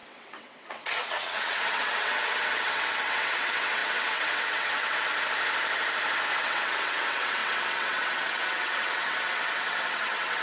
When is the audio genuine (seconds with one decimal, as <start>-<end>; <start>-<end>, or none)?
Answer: 5.1-6.4

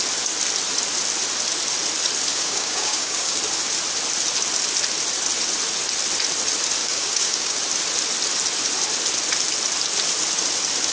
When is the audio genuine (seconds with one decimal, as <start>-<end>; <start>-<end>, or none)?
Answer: 0.0-2.3; 3.4-6.8; 7.6-10.9

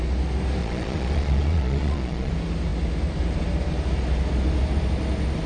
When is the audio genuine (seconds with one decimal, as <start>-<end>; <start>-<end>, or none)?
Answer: 0.0-0.6; 2.3-5.5

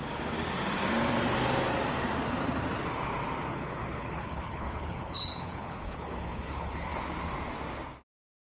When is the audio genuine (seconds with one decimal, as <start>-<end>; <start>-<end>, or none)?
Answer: 0.0-3.5; 7.0-8.5

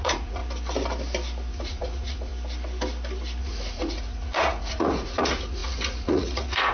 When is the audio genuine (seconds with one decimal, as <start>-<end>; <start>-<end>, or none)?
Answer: 0.4-1.5; 2.3-3.4